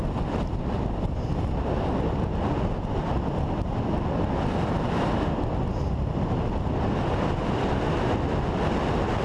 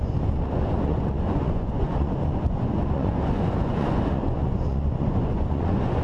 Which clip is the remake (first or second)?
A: second